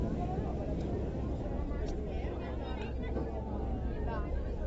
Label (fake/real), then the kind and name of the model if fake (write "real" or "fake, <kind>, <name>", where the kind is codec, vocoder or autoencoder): real